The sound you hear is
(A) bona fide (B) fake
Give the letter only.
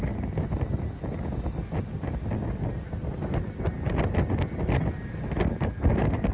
A